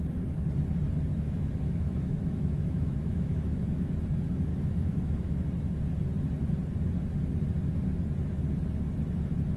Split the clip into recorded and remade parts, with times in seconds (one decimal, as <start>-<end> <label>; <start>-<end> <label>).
0.0-1.1 recorded; 1.1-3.9 remade; 3.9-4.5 recorded; 4.5-5.5 remade; 5.5-9.6 recorded